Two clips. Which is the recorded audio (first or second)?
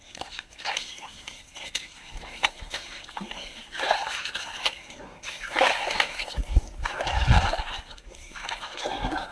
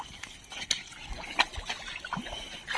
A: second